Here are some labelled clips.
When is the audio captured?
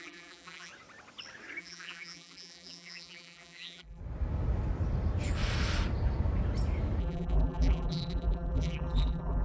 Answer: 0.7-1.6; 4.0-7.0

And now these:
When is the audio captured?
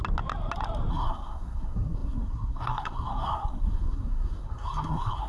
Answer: 0.0-0.9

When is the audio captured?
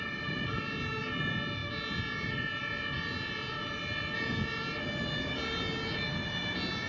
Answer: 0.0-6.9